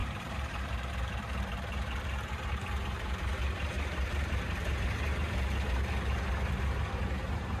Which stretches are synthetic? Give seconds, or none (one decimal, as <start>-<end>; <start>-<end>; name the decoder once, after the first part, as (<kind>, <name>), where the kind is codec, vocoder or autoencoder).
0.0-7.6 (vocoder, BigVGAN v2)